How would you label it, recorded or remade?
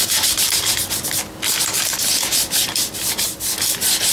recorded